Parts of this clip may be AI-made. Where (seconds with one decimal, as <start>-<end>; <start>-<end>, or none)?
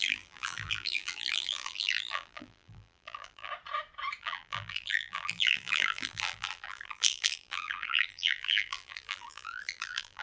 0.0-3.5; 4.2-10.2